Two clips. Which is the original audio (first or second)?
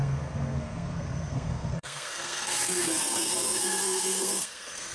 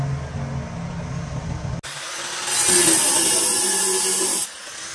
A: second